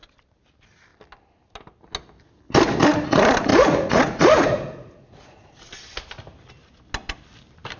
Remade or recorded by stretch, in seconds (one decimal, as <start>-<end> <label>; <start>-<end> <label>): 0.0-3.5 recorded; 3.5-5.6 remade; 5.6-7.8 recorded